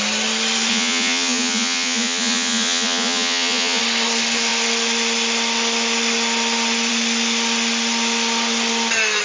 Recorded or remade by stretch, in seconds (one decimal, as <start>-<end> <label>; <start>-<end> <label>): 0.0-0.7 recorded; 0.7-3.8 remade; 3.8-9.2 recorded